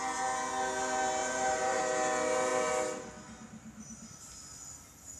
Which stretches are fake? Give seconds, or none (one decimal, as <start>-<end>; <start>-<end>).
1.2-1.8